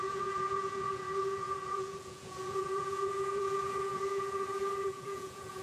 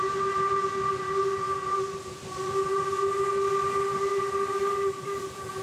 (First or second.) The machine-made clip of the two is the first